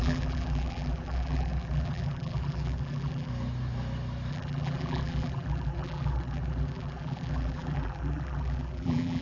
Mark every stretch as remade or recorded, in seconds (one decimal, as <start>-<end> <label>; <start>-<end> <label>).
0.0-3.3 remade; 3.3-4.3 recorded; 4.3-9.2 remade